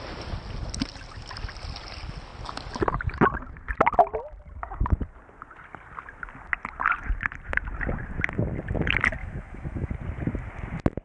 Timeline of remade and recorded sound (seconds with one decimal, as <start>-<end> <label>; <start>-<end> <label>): 0.0-9.2 recorded; 9.2-9.9 remade; 9.9-11.0 recorded

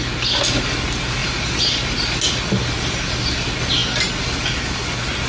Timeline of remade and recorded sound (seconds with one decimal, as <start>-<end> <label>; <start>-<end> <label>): 0.0-5.3 recorded

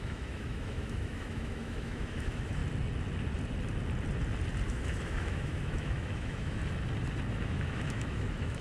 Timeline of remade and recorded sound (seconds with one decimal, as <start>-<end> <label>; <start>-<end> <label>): 0.0-2.6 remade; 2.6-4.7 recorded; 4.7-6.6 remade; 6.6-7.3 recorded; 7.3-8.6 remade

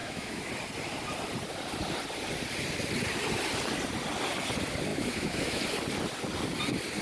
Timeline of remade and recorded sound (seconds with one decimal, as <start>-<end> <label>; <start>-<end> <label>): 0.0-0.5 remade; 0.5-4.9 recorded; 4.9-5.6 remade; 5.6-7.0 recorded

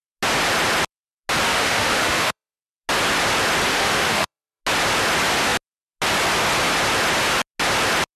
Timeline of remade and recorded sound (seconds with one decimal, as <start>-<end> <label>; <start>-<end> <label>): 0.0-1.5 recorded; 1.5-2.6 remade; 2.6-3.7 recorded; 3.7-4.6 remade; 4.6-8.2 recorded

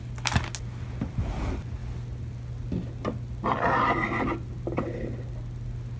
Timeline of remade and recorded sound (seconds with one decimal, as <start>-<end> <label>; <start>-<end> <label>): 0.0-6.0 recorded

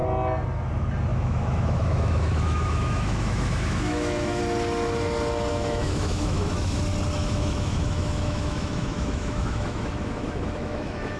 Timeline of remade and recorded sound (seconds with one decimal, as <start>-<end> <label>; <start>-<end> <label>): 0.0-1.1 recorded; 1.1-4.4 remade; 4.4-5.5 recorded; 5.5-6.8 remade; 6.8-7.2 recorded; 7.2-11.2 remade

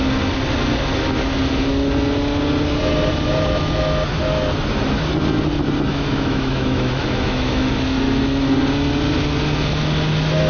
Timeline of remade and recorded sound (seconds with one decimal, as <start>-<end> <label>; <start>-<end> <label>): 0.0-5.9 recorded; 5.9-7.7 remade; 7.7-10.5 recorded